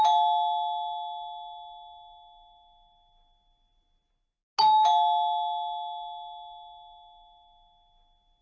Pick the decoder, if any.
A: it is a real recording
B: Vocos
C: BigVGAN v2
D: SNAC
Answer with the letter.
A